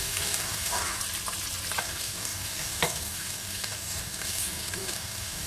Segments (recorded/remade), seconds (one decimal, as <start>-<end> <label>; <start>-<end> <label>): 0.0-1.0 remade; 1.0-1.8 recorded; 1.8-5.5 remade